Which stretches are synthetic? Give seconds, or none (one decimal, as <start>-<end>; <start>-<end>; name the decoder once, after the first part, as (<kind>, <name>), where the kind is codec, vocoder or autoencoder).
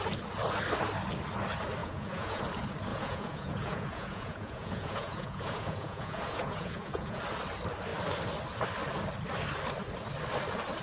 1.8-2.4 (vocoder, Vocos); 2.9-7.2